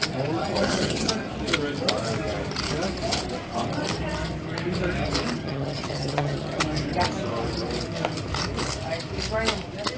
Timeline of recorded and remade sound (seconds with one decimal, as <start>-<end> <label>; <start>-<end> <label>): 0.0-0.4 recorded; 0.4-1.1 remade; 1.1-5.4 recorded; 5.4-6.6 remade; 6.6-10.0 recorded